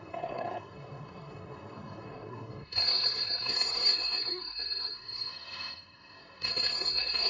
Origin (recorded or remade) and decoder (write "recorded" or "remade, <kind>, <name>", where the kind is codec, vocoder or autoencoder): remade, codec, SNAC